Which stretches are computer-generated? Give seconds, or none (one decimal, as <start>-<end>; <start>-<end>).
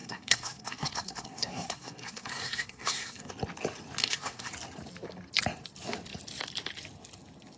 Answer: 0.0-3.3; 4.0-4.5